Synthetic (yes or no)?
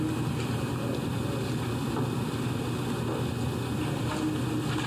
no